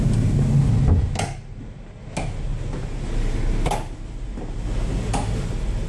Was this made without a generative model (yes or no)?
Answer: yes